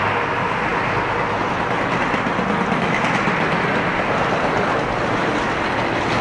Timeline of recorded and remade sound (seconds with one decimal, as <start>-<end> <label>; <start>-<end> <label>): 0.0-6.2 recorded